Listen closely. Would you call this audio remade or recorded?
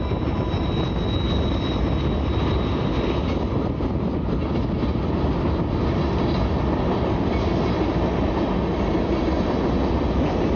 recorded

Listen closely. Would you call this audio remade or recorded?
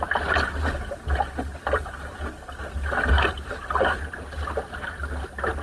recorded